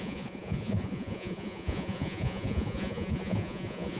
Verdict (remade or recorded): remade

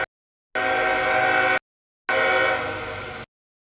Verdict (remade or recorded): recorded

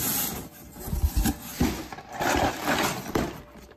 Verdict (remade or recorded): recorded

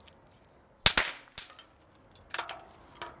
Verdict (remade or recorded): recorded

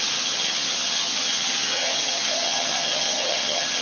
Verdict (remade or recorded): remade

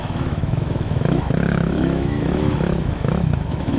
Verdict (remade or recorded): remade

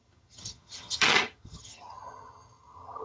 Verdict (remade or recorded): remade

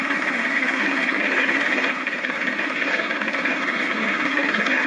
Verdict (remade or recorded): remade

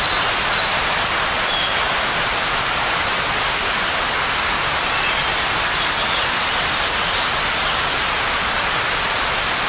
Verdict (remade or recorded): recorded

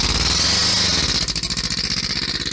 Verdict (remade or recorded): recorded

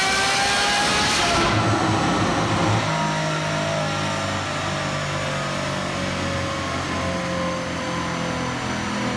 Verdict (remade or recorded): recorded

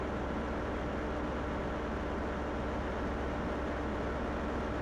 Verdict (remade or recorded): recorded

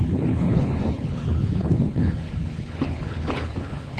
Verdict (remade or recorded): remade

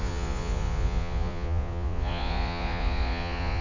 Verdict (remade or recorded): remade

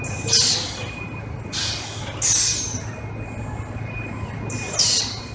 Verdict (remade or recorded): recorded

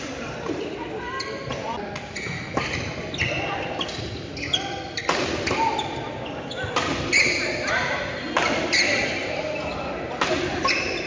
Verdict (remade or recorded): recorded